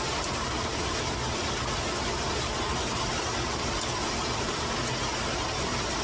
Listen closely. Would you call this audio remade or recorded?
recorded